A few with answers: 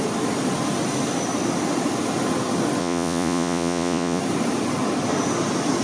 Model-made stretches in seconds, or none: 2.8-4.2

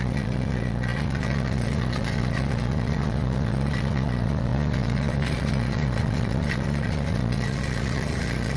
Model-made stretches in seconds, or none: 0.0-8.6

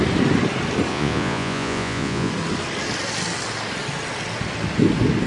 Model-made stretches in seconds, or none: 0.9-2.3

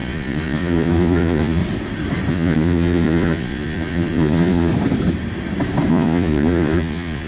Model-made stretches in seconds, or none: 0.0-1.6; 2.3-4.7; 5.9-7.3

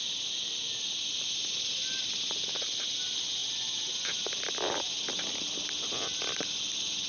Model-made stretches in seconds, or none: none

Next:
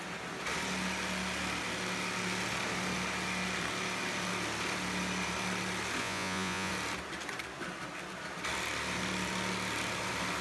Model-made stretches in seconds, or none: 6.0-6.7

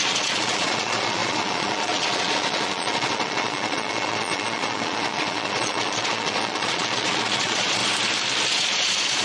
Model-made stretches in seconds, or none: 0.0-7.8; 8.5-9.2